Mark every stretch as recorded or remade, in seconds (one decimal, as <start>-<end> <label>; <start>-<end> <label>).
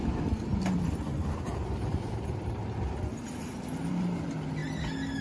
0.0-1.3 recorded; 1.3-2.6 remade; 2.6-3.9 recorded; 3.9-4.6 remade; 4.6-5.2 recorded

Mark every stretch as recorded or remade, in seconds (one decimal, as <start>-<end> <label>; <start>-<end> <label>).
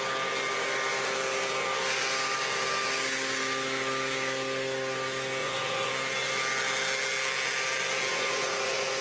0.0-5.4 recorded; 5.4-5.9 remade; 5.9-8.1 recorded; 8.1-9.0 remade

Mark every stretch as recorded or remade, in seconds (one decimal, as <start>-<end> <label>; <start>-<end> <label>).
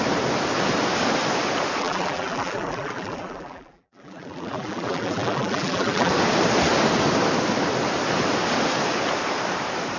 0.0-1.8 recorded; 1.8-6.1 remade; 6.1-10.0 recorded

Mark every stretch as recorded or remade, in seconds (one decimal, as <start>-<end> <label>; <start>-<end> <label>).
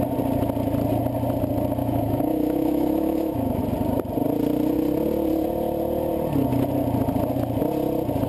0.0-1.8 recorded; 1.8-3.6 remade; 3.6-8.3 recorded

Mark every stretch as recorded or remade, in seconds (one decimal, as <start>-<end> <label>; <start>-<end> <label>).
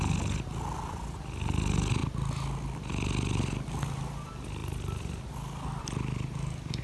0.0-6.8 recorded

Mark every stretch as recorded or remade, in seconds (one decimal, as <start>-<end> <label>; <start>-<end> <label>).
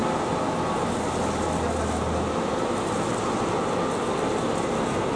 0.0-5.2 recorded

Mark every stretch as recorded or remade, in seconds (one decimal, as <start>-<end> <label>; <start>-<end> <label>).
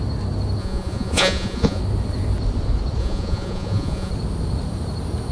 0.0-0.6 recorded; 0.6-1.8 remade; 1.8-3.0 recorded; 3.0-4.1 remade; 4.1-5.3 recorded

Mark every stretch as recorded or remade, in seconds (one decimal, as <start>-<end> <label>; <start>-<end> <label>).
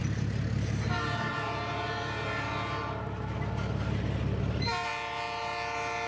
0.0-6.1 recorded